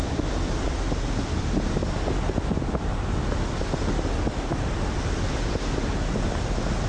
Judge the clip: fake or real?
fake